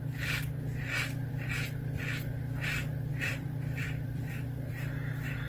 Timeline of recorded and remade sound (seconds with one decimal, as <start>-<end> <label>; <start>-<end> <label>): 0.0-3.1 recorded; 3.1-4.7 remade; 4.7-5.5 recorded